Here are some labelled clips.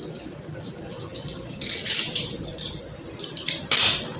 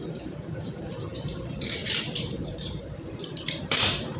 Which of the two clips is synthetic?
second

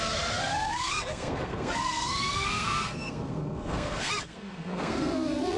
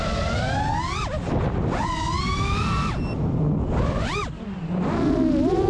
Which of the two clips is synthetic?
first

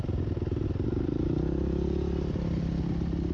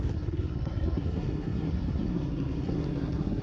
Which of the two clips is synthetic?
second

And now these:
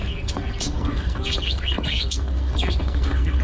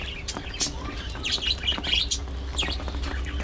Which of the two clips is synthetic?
first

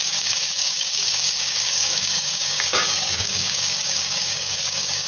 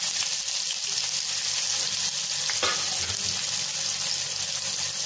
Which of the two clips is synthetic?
first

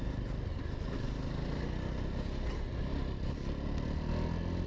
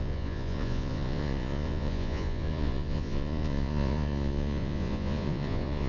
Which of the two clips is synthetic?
second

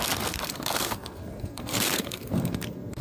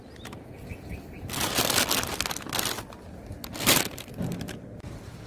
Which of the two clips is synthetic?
first